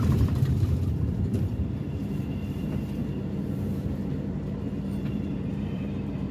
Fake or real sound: fake